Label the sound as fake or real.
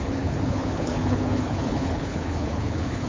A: fake